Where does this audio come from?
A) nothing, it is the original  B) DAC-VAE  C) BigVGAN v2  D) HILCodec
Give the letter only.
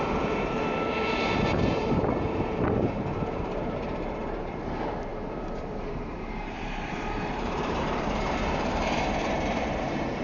C